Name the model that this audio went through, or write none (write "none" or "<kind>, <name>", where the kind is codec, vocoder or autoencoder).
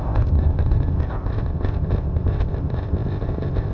codec, ZipCodec